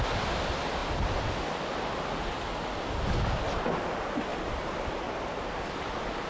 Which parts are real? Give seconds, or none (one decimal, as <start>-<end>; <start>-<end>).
0.0-6.3